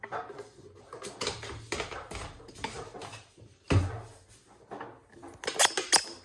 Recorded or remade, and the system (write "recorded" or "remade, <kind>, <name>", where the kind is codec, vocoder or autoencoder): recorded